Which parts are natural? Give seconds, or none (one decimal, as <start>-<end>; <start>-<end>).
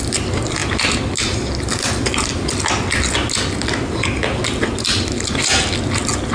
0.0-6.3